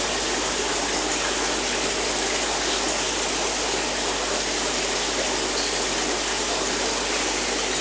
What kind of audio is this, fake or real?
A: real